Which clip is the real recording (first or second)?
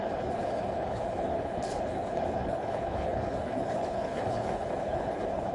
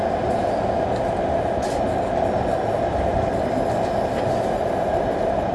second